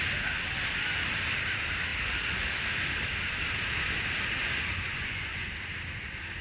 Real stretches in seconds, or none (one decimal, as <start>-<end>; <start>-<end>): 0.0-4.4; 5.5-6.4